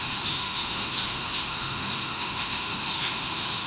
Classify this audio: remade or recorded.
remade